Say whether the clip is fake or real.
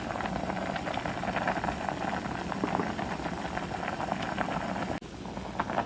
real